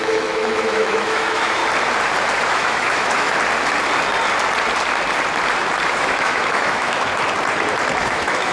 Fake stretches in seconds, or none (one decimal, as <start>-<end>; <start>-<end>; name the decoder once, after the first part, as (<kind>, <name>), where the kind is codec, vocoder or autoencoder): 0.0-1.6 (autoencoder, DAC-VAE); 2.5-3.3; 5.9-7.1; 8.0-8.5